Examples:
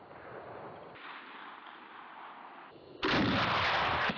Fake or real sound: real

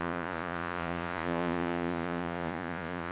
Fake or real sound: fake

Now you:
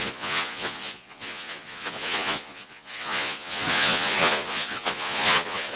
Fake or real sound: fake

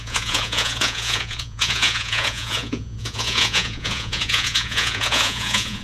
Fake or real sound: fake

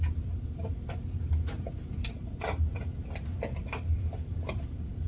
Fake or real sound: real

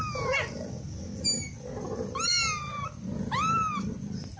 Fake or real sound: real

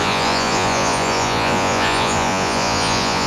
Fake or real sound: fake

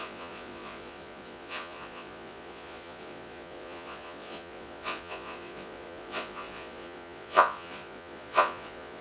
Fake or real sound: fake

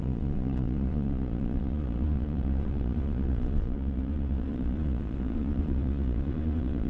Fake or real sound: fake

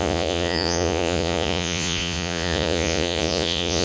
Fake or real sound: fake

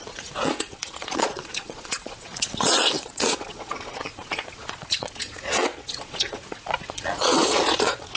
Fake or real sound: fake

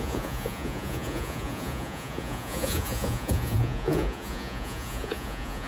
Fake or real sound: fake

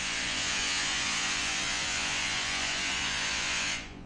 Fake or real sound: fake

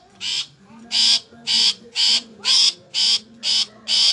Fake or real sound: fake